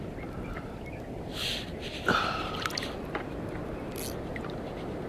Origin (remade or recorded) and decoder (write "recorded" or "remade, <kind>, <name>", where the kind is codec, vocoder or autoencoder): recorded